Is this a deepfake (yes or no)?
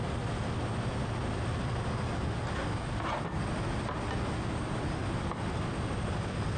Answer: no